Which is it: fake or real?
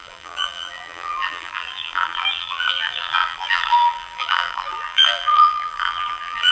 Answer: fake